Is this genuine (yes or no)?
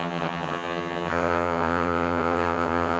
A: no